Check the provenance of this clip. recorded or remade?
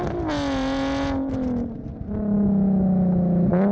recorded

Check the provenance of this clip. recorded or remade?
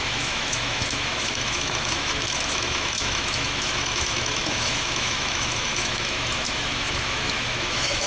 remade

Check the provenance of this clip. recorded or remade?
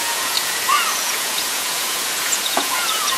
remade